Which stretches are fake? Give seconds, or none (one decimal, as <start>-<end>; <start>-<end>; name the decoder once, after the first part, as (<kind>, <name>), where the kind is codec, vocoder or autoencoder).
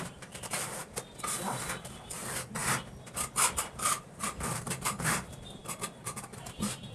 0.0-0.8 (vocoder, BigVGAN v2); 1.6-2.6; 3.5-6.9